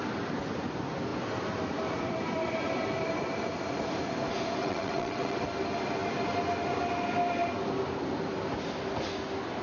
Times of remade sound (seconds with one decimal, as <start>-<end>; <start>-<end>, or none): 4.6-5.4